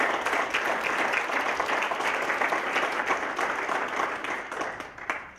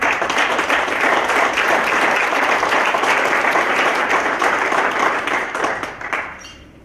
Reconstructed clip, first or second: second